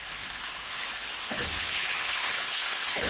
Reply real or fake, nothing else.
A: fake